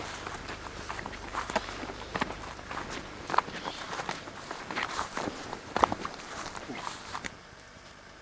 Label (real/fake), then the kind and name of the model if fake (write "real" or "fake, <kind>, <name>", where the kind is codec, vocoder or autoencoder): fake, vocoder, BigVGAN v2